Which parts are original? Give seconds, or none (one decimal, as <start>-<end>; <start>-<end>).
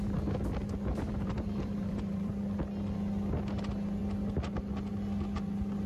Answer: 0.0-0.9; 2.3-5.9